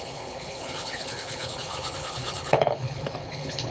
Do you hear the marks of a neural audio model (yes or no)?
yes